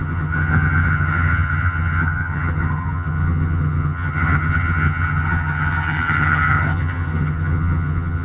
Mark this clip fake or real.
fake